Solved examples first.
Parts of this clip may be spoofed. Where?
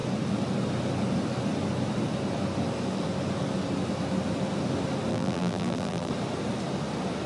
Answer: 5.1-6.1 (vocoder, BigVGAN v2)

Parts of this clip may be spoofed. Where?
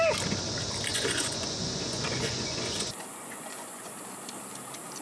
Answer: 0.9-3.9 (vocoder, Vocos)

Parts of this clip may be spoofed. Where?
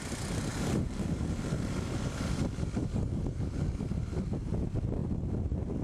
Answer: 0.5-4.0 (codec, DAC)